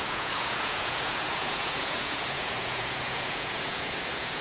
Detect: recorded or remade remade